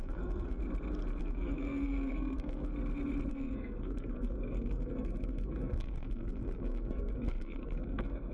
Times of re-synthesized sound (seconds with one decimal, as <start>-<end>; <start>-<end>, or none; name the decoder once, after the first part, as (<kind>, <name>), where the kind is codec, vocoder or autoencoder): 0.0-0.6 (codec, SNAC); 1.2-2.7; 3.3-8.3

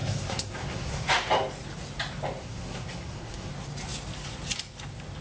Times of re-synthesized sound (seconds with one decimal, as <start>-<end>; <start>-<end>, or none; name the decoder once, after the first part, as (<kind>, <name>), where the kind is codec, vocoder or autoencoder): 0.0-1.1 (codec, SNAC); 2.4-3.5

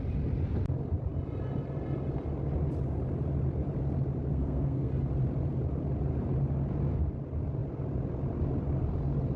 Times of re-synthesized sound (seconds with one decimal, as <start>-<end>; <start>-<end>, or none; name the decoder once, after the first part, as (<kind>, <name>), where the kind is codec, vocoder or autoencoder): 4.3-4.9 (codec, SNAC)

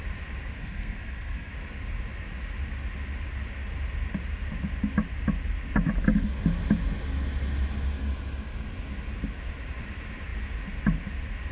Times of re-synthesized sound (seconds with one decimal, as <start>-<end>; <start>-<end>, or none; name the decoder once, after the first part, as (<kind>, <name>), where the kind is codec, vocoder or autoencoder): 0.6-1.5 (codec, SNAC)

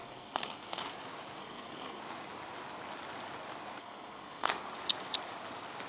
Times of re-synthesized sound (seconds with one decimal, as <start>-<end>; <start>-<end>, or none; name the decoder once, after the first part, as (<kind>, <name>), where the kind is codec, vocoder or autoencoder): 0.0-0.8 (codec, SNAC); 1.4-2.0; 3.8-4.5

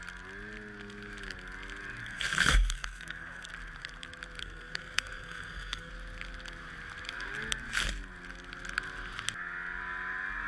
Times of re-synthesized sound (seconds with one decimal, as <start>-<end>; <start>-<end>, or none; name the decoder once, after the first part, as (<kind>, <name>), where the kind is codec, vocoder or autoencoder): 2.0-3.5 (codec, SNAC); 4.4-5.9

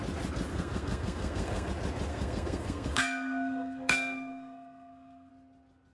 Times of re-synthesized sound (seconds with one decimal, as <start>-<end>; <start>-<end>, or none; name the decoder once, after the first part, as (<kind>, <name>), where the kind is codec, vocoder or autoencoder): 0.5-1.7 (codec, SNAC); 2.1-5.3